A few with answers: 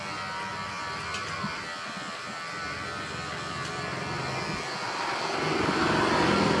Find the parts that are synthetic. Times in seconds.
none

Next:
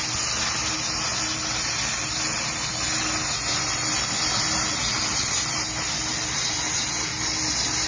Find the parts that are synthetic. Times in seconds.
none

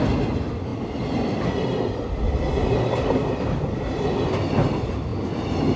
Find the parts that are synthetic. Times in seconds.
none

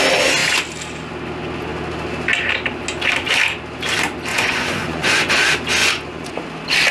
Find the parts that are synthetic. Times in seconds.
4.3-5.3 (vocoder, Vocos); 5.8-6.4

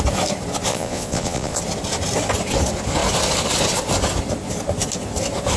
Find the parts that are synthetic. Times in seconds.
0.7-1.6 (vocoder, Vocos)

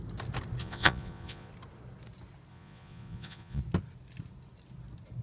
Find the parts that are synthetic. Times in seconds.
0.6-1.5 (vocoder, Vocos); 2.5-3.6

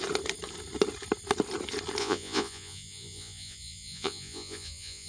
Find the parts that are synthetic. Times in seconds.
2.0-5.1 (vocoder, Vocos)

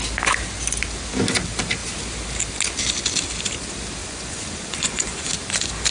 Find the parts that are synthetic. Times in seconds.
4.0-5.3 (vocoder, Vocos)